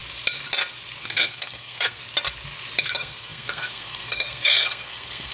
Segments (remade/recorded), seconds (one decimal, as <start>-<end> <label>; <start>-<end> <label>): 0.0-1.0 recorded; 1.0-2.0 remade; 2.0-2.8 recorded; 2.8-5.3 remade